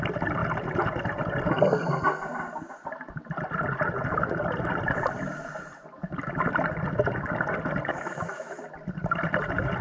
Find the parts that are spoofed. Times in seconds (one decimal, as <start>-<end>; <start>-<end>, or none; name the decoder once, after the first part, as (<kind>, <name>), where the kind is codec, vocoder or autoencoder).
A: 7.9-8.6 (autoencoder, DAC-VAE)